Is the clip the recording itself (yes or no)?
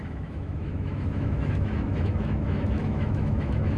no